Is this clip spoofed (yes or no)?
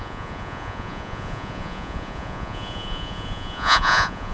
yes